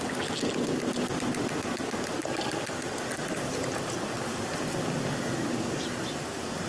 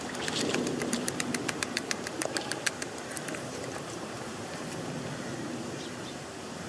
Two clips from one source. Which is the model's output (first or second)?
second